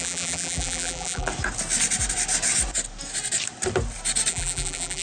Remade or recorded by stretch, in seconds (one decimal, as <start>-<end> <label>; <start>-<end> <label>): 0.0-1.3 remade; 1.3-4.3 recorded; 4.3-5.0 remade